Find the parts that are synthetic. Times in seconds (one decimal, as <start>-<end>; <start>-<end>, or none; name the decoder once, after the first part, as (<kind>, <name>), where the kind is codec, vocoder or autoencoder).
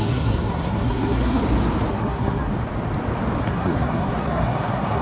0.0-1.4 (codec, SNAC); 1.9-2.5; 3.4-5.0